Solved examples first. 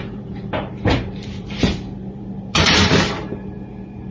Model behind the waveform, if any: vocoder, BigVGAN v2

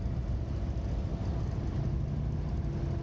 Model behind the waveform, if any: none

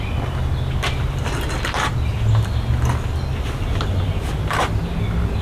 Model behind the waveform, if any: none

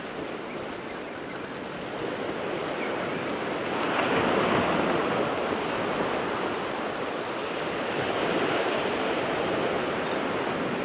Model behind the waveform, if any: none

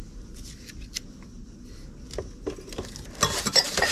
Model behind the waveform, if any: none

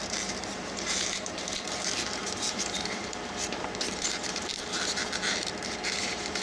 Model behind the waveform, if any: vocoder, BigVGAN v2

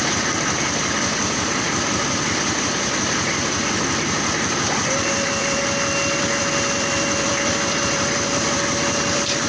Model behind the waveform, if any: vocoder, BigVGAN v2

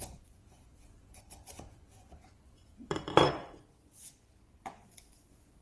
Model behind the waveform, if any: vocoder, Vocos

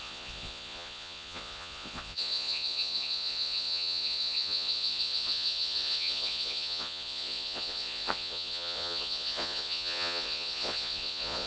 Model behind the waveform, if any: vocoder, Vocos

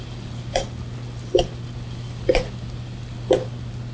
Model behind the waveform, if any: none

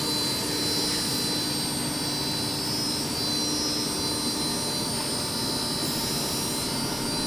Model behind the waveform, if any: none